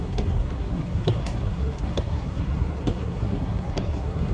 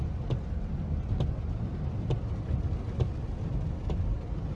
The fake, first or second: first